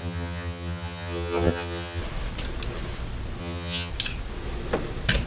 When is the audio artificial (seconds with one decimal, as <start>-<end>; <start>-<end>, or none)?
0.0-2.0; 3.4-3.9